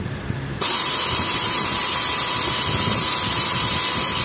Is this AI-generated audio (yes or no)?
yes